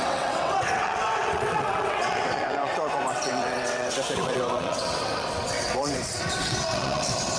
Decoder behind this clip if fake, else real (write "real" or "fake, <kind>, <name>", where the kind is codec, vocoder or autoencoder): fake, vocoder, WaveNeXt